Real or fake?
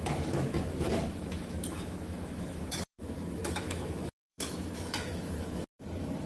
fake